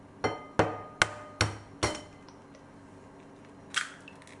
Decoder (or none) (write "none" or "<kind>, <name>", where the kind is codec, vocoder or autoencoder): none